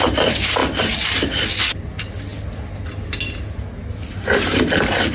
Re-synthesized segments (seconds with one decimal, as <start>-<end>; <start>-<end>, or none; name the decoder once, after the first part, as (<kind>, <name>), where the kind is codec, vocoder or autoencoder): none